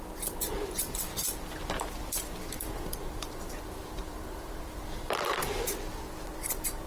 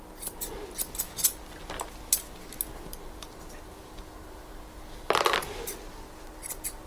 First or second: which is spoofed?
first